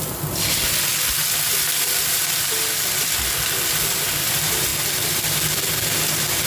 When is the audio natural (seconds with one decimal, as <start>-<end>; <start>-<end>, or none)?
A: 0.9-3.0; 4.7-6.5